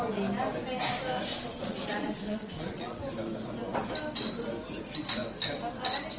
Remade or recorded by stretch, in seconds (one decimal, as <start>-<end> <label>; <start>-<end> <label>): 0.0-1.3 recorded; 1.3-3.0 remade; 3.0-6.2 recorded